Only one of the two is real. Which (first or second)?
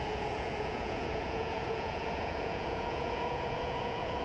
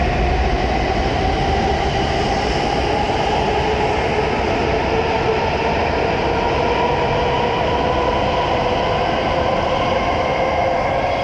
second